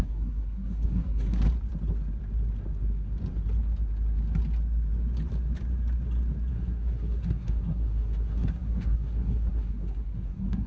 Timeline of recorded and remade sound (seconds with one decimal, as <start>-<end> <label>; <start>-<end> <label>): 0.0-1.4 remade; 1.4-6.5 recorded; 6.5-10.7 remade